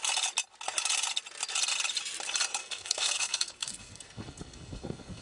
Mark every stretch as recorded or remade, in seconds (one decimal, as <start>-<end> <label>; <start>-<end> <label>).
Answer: 0.0-2.6 recorded; 2.6-5.2 remade